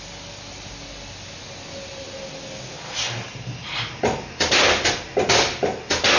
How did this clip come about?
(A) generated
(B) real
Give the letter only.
B